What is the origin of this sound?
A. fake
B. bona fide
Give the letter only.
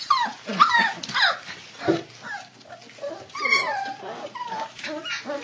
B